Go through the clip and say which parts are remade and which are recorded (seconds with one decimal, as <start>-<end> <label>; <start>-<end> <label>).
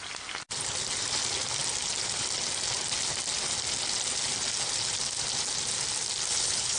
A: 0.0-6.3 recorded; 6.3-6.8 remade